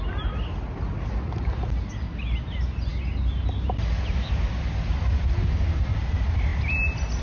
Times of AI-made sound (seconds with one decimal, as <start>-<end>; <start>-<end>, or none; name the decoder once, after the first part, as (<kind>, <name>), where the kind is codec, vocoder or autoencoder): none